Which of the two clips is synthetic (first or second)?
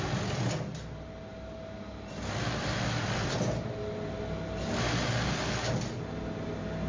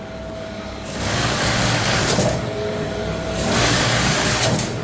second